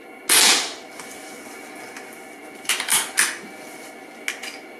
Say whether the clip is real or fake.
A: real